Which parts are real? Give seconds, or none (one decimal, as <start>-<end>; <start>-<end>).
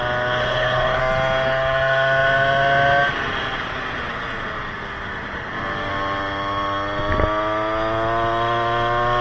0.0-0.4; 1.0-9.2